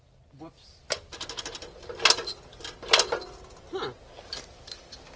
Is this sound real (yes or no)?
yes